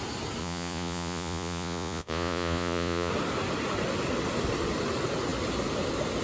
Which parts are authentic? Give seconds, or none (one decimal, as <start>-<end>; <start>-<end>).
0.0-0.4; 3.1-6.2